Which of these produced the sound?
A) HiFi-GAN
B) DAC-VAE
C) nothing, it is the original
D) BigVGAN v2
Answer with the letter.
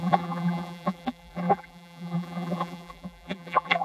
D